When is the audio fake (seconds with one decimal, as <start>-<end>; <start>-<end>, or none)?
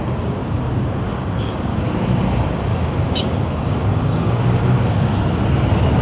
0.0-5.1